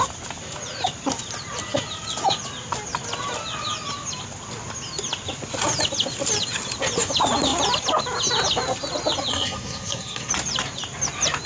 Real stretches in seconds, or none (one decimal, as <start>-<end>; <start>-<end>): 0.0-9.3; 10.3-11.5